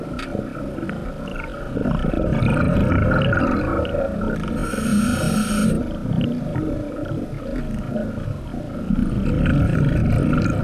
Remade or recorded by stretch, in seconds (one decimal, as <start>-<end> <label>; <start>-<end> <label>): 0.0-10.6 recorded